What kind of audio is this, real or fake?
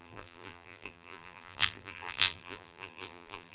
fake